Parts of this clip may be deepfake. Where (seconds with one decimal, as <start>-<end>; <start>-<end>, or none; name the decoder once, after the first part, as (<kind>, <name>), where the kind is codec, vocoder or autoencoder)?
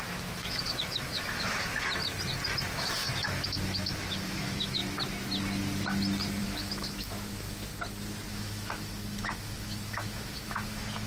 0.0-1.7 (autoencoder, DAC-VAE); 2.7-4.8; 6.4-7.7; 8.3-11.1